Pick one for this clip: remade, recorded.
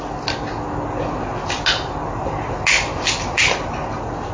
recorded